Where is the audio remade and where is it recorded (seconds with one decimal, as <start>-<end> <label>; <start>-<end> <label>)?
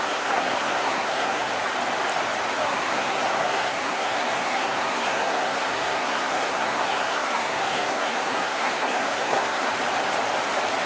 0.0-1.5 remade; 1.5-2.6 recorded; 2.6-9.7 remade; 9.7-10.9 recorded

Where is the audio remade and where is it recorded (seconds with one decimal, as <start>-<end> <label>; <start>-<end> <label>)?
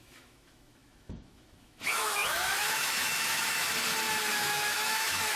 0.0-3.6 remade; 3.6-4.3 recorded; 4.3-5.4 remade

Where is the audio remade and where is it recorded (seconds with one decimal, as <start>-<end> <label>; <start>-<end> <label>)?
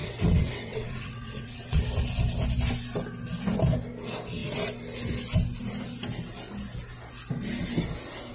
0.0-1.8 remade; 1.8-8.3 recorded